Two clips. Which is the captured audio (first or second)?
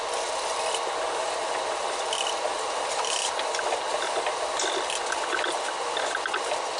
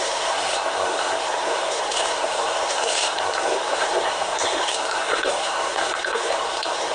first